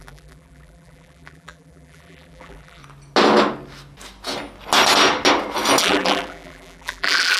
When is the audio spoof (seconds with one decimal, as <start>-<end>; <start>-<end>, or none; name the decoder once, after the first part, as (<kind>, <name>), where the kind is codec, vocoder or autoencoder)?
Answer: 0.0-2.8 (vocoder, BigVGAN v2); 5.8-7.4